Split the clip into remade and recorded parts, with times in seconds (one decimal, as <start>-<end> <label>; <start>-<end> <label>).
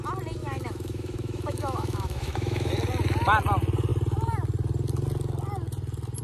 0.0-0.4 recorded; 0.4-2.7 remade; 2.7-6.2 recorded